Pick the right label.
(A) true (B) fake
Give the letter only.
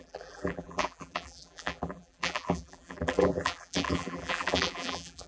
B